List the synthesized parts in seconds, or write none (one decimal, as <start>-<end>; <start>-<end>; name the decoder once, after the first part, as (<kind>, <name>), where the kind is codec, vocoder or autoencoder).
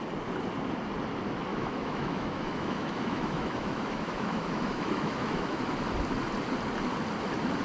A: 1.5-5.6 (autoencoder, DAC-VAE)